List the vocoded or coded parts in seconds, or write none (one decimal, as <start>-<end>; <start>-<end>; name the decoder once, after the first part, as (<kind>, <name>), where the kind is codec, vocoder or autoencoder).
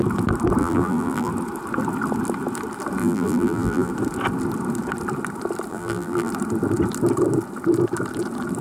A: 0.6-1.3 (vocoder, BigVGAN v2); 3.0-3.9; 5.7-6.3